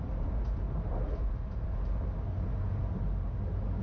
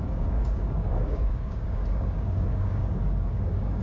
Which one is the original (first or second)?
first